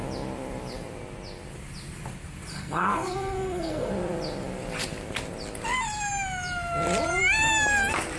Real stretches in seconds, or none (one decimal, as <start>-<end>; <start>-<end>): 0.0-2.5; 3.9-8.2